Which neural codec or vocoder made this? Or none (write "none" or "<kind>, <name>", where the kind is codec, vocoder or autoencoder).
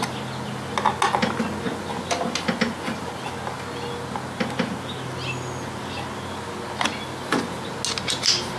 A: none